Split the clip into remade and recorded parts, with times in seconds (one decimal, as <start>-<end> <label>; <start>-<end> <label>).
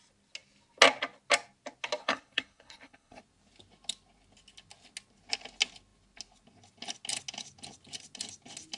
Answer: 0.0-2.0 recorded; 2.0-3.2 remade; 3.2-8.8 recorded